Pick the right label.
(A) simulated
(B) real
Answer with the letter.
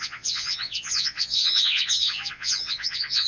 A